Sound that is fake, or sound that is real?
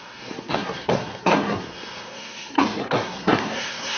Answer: fake